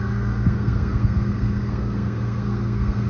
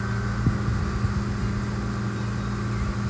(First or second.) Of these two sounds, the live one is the second